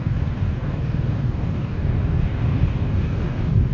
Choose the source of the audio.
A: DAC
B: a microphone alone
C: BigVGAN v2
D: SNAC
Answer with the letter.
A